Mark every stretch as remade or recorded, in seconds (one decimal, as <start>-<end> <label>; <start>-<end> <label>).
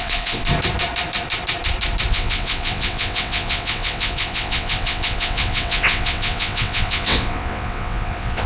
0.0-0.4 remade; 0.4-2.1 recorded; 2.1-8.5 remade